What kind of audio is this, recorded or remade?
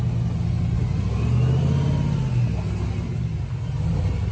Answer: recorded